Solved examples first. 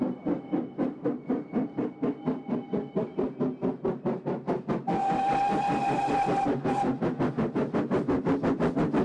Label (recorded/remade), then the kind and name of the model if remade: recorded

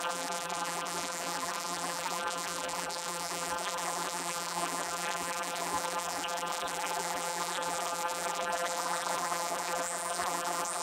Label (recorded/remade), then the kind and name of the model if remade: remade, vocoder, BigVGAN v2